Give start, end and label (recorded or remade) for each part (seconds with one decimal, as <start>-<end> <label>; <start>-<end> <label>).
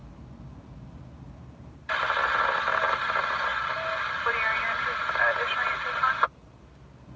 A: 0.0-7.2 recorded